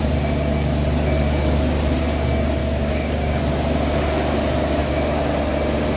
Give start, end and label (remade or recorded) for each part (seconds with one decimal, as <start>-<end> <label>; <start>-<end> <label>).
0.0-2.6 recorded; 2.6-3.4 remade; 3.4-6.0 recorded